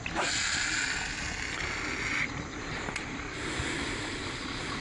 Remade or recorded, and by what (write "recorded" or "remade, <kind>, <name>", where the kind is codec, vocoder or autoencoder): recorded